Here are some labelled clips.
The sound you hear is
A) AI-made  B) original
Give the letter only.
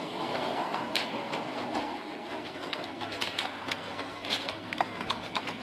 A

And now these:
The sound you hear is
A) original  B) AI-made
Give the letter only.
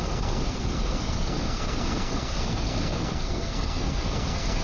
B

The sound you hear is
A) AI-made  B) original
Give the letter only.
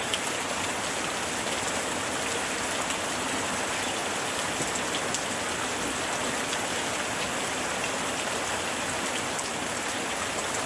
B